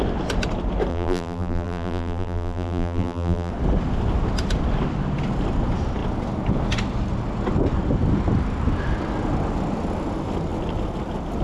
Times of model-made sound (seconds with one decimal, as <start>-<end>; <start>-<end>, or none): 0.9-3.5